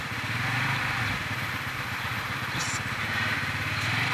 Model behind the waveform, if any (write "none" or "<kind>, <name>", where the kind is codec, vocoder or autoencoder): none